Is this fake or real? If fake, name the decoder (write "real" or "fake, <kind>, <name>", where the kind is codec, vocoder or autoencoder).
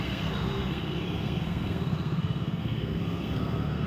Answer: fake, codec, SNAC